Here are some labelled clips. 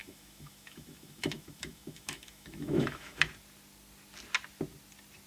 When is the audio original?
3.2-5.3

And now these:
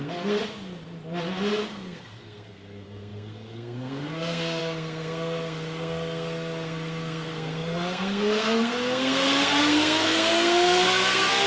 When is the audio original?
0.4-1.5

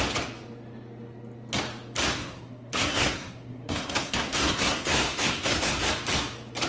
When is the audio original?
0.0-2.2; 5.9-6.7

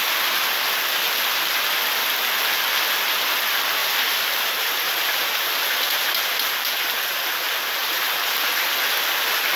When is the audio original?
0.0-3.8; 6.8-7.8; 8.6-9.6

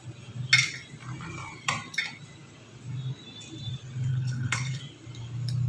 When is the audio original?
0.0-4.1; 4.8-5.7

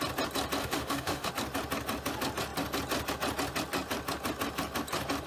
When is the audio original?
0.0-0.6; 1.3-5.3

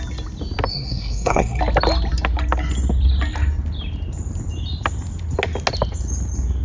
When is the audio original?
0.0-0.7; 1.6-6.6

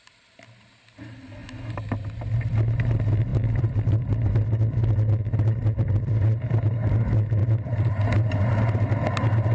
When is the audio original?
0.0-3.3; 6.7-7.4; 7.9-9.5